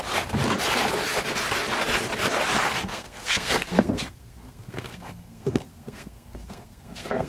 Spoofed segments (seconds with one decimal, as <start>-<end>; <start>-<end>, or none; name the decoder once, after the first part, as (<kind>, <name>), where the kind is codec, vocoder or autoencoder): 2.9-7.3 (codec, SNAC)